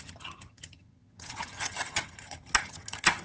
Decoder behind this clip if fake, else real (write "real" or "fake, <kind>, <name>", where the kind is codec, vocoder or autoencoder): fake, vocoder, HiFi-GAN